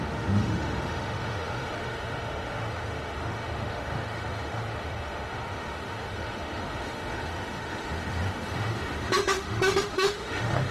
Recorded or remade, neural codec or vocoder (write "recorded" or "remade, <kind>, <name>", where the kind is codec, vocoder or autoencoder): remade, autoencoder, DAC-VAE